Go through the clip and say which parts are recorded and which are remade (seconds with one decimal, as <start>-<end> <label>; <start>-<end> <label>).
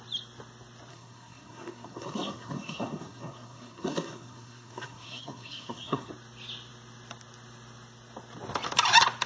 0.0-0.9 recorded; 0.9-6.1 remade; 6.1-9.3 recorded